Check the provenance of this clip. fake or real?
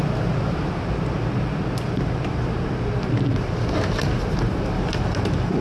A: real